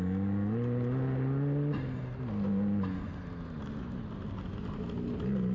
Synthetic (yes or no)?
no